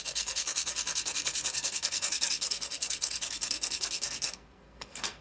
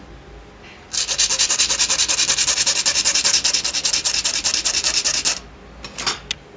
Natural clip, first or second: second